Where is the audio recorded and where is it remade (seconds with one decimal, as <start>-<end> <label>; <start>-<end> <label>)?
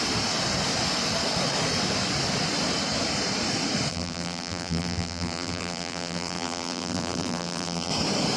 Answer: 0.0-3.9 recorded; 3.9-7.9 remade; 7.9-8.4 recorded